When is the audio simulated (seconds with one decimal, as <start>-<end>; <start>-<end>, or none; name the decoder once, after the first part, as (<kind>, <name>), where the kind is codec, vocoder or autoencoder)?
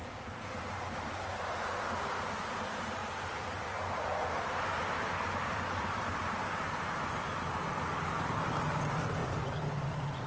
0.0-0.6 (vocoder, BigVGAN v2); 3.0-7.1; 9.2-10.3